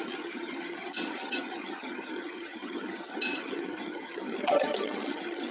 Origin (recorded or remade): remade